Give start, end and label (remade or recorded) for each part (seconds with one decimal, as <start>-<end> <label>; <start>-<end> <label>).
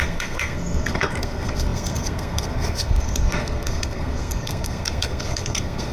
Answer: 0.0-5.9 remade